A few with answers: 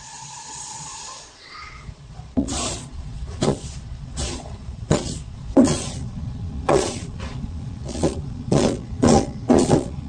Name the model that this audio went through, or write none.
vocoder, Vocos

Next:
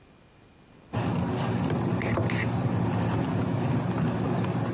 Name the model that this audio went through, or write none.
none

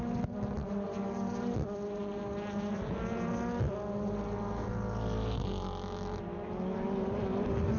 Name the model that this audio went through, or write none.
none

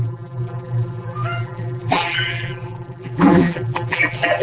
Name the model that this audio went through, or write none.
vocoder, BigVGAN v2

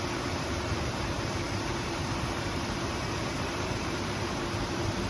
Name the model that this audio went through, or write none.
vocoder, BigVGAN v2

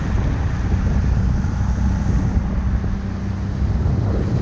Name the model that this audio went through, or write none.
none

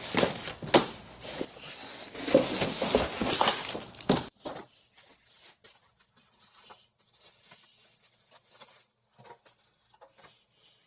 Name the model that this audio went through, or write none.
none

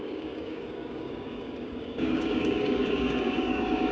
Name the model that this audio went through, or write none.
codec, DAC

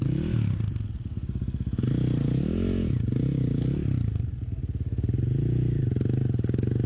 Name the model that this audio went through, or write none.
none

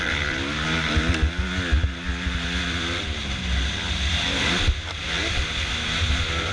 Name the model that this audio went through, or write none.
none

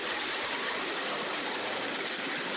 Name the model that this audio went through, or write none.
none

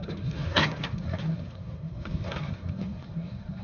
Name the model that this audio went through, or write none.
codec, SNAC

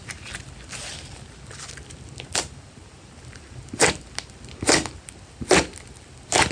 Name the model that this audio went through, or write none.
none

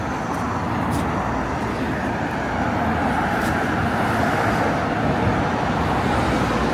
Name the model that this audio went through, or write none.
none